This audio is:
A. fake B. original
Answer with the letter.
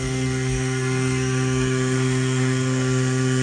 A